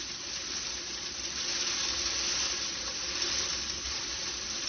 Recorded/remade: recorded